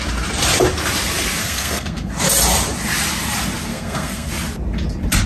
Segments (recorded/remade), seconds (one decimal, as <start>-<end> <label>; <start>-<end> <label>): 0.0-1.4 recorded; 1.4-2.1 remade; 2.1-3.7 recorded; 3.7-4.3 remade; 4.3-5.3 recorded